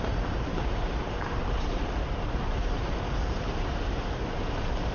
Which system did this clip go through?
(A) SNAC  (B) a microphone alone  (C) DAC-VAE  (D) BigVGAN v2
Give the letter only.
D